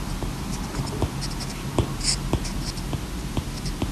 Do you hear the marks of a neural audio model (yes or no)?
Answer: no